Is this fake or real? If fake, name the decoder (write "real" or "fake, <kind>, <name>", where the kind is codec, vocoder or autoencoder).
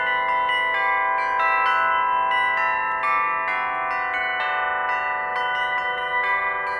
real